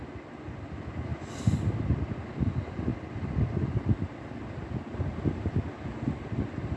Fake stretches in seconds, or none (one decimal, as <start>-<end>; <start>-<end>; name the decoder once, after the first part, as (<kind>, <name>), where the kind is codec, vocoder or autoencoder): none